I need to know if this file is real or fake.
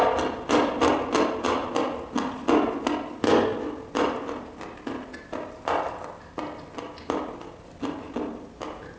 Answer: real